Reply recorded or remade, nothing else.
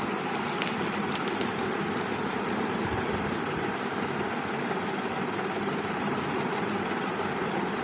recorded